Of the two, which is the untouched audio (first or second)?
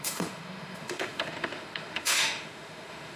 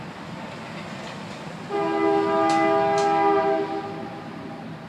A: second